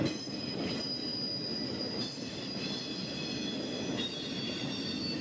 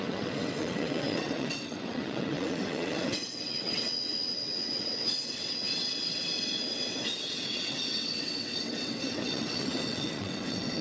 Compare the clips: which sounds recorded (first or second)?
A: first